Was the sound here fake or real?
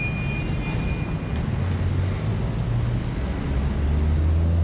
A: real